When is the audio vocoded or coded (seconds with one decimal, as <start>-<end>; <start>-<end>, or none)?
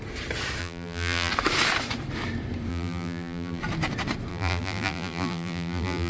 0.6-1.3; 2.7-3.6; 4.3-6.1